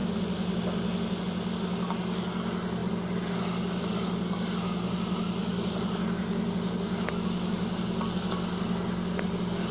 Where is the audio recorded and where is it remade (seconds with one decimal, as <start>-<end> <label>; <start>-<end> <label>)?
0.0-9.7 recorded